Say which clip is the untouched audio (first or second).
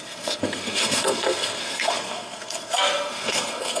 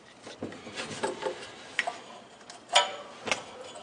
second